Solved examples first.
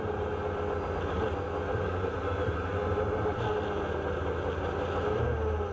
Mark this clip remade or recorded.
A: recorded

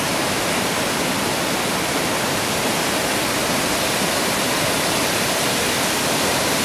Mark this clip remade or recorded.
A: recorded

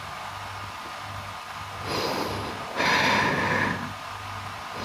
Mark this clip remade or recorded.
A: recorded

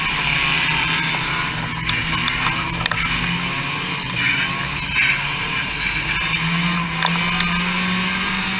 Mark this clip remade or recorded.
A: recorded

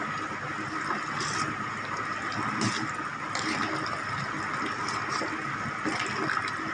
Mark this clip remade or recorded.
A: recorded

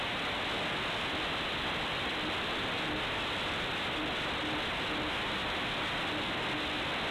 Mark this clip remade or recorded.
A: recorded